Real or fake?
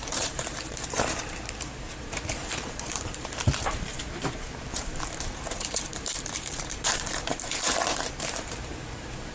fake